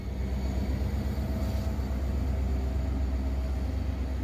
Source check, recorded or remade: recorded